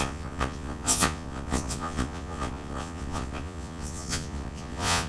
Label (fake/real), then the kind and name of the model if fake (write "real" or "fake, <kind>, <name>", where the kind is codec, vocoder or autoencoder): fake, vocoder, Vocos